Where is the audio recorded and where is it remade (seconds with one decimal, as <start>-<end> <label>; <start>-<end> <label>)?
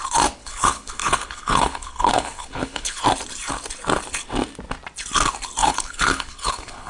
0.0-0.4 recorded; 0.4-3.0 remade; 3.0-5.6 recorded; 5.6-6.9 remade